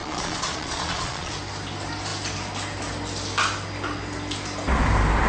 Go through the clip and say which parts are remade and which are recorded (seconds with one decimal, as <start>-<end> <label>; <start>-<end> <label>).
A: 0.0-1.3 remade; 1.3-5.3 recorded